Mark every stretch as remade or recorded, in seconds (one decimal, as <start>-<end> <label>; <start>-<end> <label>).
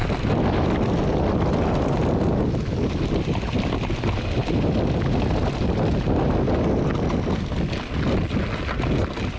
0.0-9.4 recorded